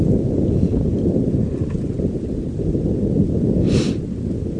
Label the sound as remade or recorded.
recorded